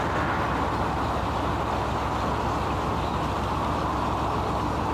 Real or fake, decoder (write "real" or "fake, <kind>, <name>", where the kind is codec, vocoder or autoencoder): real